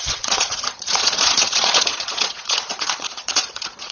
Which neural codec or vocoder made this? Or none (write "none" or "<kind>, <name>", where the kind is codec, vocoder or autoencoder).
vocoder, Vocos